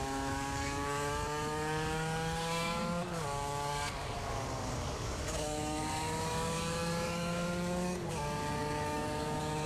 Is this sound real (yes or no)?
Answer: no